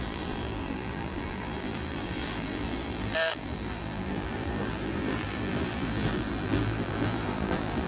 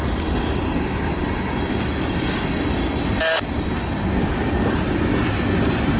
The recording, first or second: second